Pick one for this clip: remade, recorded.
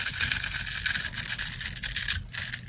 recorded